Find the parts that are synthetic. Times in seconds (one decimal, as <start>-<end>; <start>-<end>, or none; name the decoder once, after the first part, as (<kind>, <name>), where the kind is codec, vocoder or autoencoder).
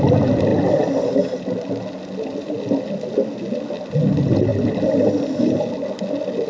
none